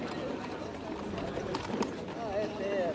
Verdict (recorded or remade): recorded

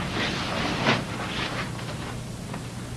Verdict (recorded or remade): recorded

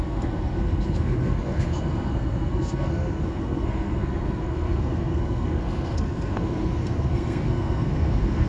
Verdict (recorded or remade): remade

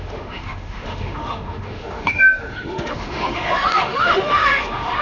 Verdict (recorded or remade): remade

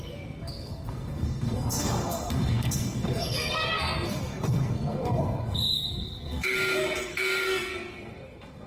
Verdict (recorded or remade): remade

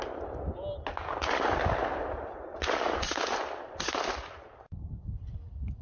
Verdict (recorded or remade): recorded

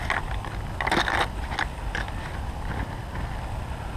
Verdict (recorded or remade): recorded